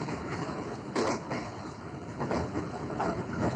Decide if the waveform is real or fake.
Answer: fake